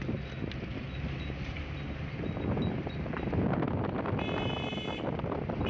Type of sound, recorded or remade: recorded